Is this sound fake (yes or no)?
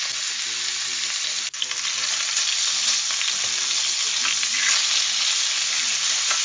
no